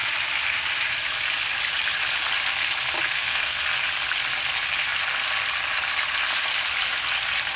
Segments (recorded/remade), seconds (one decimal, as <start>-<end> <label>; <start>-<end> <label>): 0.0-3.1 recorded; 3.1-3.6 remade; 3.6-7.6 recorded